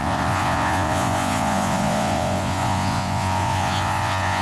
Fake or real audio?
fake